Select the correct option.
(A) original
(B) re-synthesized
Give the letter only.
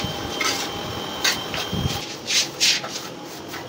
B